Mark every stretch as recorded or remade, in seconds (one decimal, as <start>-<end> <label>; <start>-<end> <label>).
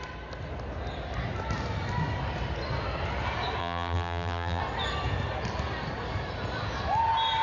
0.0-3.6 recorded; 3.6-4.6 remade; 4.6-7.4 recorded